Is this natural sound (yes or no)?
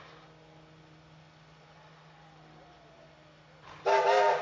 yes